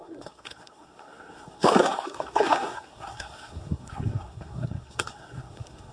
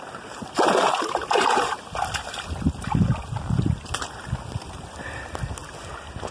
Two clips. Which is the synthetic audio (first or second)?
first